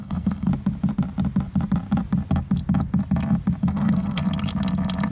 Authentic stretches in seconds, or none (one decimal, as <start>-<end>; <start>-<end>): 0.5-3.6; 4.2-5.1